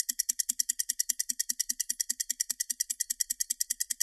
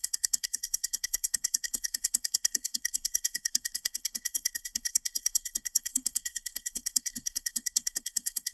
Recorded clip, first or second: first